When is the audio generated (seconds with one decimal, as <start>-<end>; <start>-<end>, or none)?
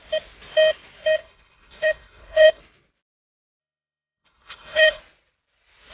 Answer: 1.2-2.6; 3.6-5.0